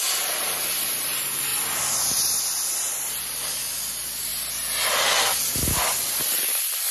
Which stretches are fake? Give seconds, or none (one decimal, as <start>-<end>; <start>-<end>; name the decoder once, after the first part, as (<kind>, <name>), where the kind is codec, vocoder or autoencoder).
none